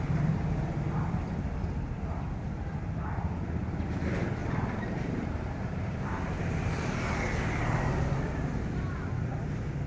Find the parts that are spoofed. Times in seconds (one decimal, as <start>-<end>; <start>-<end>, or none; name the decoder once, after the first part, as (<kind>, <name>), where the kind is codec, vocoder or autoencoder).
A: 4.4-6.4 (vocoder, BigVGAN v2)